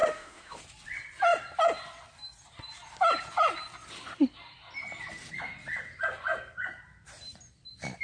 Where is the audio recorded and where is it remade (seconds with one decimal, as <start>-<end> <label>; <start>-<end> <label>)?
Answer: 0.0-0.6 remade; 0.6-8.0 recorded